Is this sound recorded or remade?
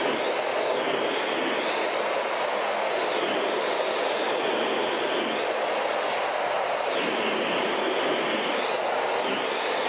recorded